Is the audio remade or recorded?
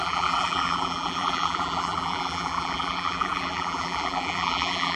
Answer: remade